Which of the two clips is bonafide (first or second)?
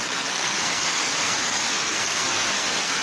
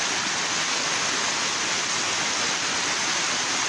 second